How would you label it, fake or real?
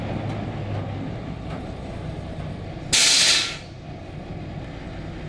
real